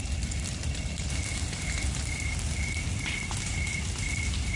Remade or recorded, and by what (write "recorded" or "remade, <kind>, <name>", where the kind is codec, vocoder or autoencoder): recorded